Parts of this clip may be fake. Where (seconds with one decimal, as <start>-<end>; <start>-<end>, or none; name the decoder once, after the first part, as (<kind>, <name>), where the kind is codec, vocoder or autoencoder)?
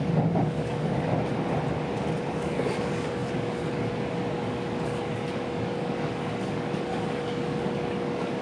0.0-1.1 (codec, DAC); 2.3-8.4